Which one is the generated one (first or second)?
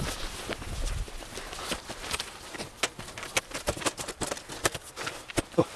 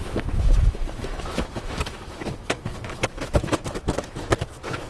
second